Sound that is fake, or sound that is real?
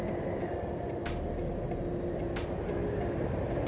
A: real